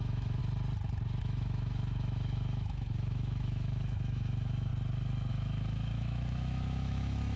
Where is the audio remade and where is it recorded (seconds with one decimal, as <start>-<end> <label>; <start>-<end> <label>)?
0.0-0.4 remade; 0.4-1.2 recorded; 1.2-4.7 remade; 4.7-5.3 recorded; 5.3-7.4 remade